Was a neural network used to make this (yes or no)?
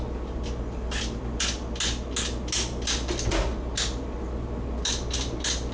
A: no